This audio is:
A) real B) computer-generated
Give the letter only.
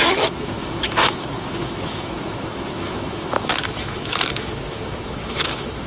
B